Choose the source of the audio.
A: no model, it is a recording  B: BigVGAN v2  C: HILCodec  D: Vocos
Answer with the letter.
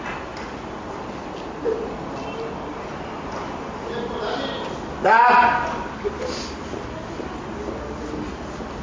A